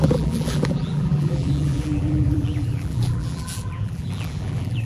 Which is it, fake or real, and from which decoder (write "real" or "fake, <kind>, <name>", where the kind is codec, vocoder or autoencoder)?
fake, vocoder, BigVGAN v2